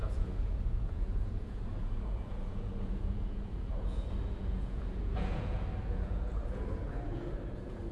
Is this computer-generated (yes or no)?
yes